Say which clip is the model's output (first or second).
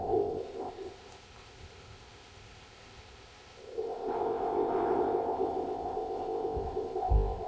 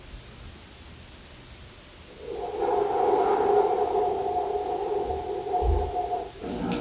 first